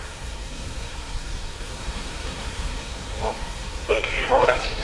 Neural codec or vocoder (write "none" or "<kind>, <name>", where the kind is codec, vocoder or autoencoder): codec, SNAC